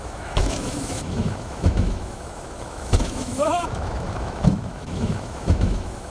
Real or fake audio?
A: fake